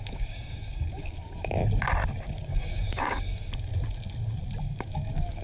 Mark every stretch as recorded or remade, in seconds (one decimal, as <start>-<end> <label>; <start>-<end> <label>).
0.0-1.6 remade; 1.6-2.3 recorded; 2.3-3.7 remade; 3.7-4.6 recorded; 4.6-5.4 remade